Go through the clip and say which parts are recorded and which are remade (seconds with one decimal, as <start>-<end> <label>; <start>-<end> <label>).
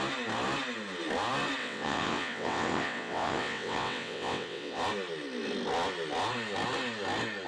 0.0-1.6 recorded; 1.6-4.8 remade; 4.8-7.5 recorded